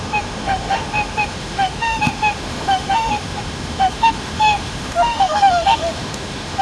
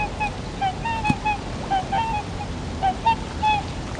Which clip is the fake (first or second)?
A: first